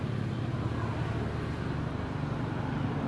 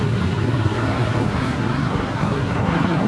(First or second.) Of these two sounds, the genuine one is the first